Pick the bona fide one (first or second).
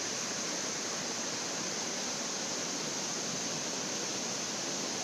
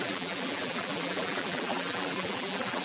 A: first